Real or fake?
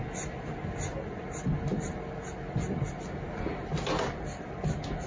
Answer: real